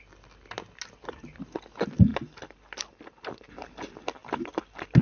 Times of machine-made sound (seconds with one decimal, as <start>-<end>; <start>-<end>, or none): none

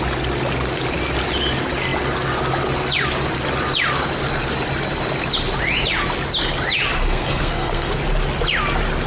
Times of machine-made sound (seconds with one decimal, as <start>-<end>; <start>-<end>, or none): 7.0-7.9